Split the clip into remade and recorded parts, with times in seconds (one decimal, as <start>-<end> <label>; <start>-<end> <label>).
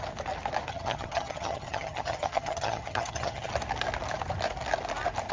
0.0-0.7 recorded; 0.7-3.5 remade; 3.5-5.3 recorded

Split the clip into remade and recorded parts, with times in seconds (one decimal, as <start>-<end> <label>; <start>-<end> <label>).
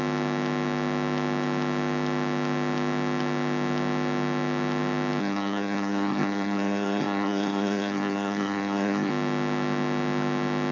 0.0-5.2 recorded; 5.2-9.1 remade; 9.1-10.7 recorded